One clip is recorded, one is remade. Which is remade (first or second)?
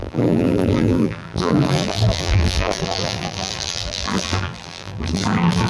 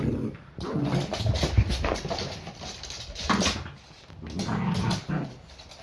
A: first